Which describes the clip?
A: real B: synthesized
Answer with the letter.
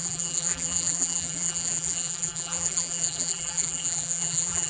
B